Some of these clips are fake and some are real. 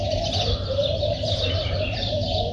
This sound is fake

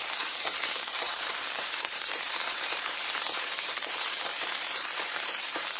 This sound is fake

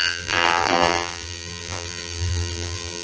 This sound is fake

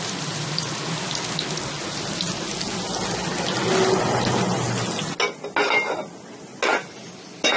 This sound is real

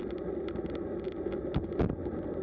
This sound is real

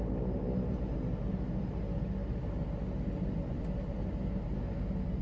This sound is real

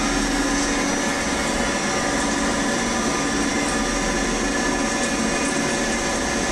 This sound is real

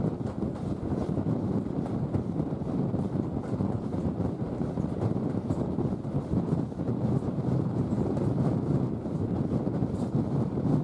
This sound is fake